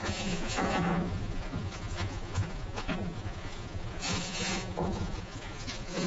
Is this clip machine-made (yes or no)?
yes